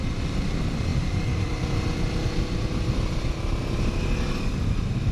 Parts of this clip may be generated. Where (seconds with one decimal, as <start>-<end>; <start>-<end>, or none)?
none